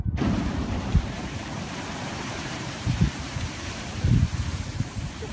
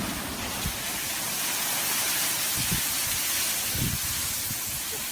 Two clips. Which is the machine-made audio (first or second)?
first